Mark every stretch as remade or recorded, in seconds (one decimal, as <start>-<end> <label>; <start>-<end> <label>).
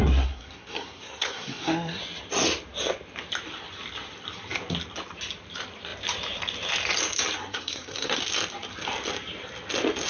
0.0-2.0 remade; 2.0-7.4 recorded; 7.4-8.2 remade; 8.2-10.1 recorded